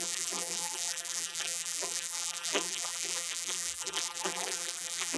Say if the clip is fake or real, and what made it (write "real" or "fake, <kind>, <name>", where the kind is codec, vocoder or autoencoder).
fake, vocoder, BigVGAN v2